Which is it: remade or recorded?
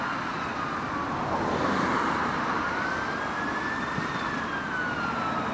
recorded